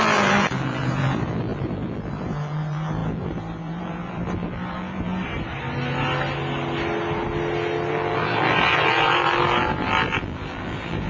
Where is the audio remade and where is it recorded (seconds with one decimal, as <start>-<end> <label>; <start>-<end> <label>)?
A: 0.0-5.1 remade; 5.1-7.9 recorded; 7.9-11.1 remade